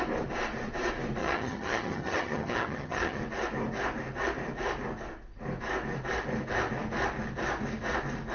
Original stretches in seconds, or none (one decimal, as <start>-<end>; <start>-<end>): 0.0-1.2; 3.2-8.3